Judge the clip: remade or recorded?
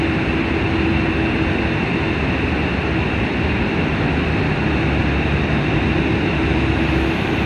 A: recorded